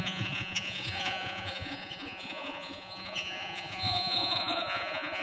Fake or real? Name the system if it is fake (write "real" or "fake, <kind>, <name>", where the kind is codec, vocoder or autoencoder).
fake, vocoder, Vocos